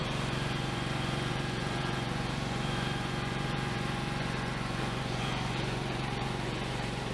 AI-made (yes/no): yes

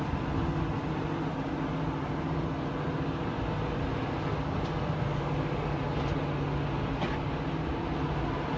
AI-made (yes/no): no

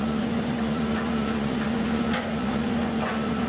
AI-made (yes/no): yes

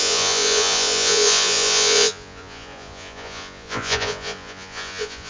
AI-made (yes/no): yes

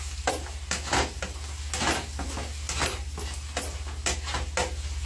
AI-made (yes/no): no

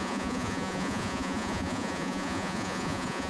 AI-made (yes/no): yes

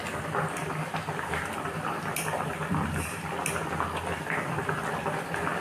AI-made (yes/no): no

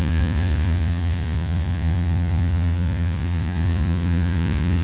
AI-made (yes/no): yes